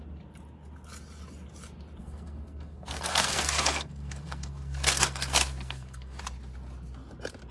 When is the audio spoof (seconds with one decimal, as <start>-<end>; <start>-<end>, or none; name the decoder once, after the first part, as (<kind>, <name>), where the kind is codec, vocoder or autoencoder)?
2.0-6.2 (codec, SNAC)